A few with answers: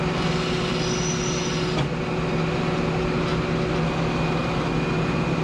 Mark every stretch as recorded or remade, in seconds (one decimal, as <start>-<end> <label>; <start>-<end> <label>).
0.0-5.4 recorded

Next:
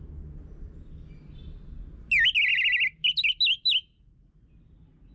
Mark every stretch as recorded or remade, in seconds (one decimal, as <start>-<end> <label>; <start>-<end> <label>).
0.0-5.1 recorded

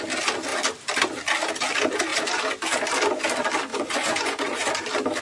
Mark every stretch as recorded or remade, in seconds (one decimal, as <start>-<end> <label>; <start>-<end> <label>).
0.0-3.7 recorded; 3.7-4.7 remade; 4.7-5.2 recorded